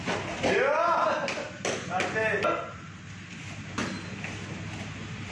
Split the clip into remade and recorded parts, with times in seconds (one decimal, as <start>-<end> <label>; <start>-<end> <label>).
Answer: 0.0-5.3 recorded